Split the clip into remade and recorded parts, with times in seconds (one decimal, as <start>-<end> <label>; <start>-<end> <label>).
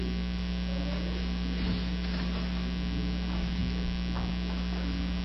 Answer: 0.0-5.2 recorded